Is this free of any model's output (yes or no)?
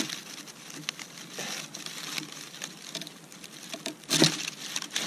yes